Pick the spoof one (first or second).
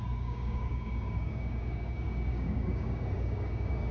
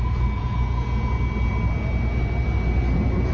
first